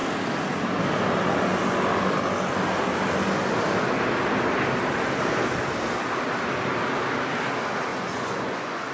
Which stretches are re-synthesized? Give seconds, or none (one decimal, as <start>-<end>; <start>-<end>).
7.9-8.9

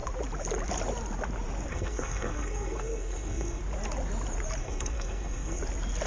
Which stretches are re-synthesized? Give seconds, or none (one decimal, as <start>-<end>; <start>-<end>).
1.7-3.6; 4.6-5.6

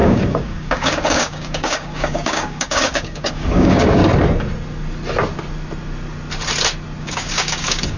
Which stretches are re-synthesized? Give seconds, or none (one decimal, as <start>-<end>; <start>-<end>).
0.0-4.0; 7.0-8.0

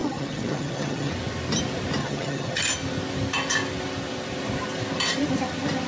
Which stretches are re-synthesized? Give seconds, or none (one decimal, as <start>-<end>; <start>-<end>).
0.0-1.1; 2.0-2.6

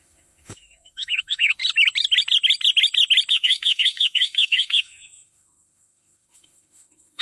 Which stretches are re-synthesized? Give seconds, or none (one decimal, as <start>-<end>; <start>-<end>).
0.0-1.6; 3.3-7.2

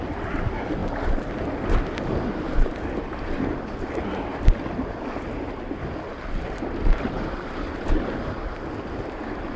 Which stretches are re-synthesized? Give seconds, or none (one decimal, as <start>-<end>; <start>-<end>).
none

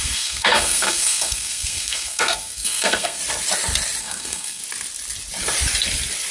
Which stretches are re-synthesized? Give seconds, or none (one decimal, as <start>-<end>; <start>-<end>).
0.0-3.2; 4.0-4.6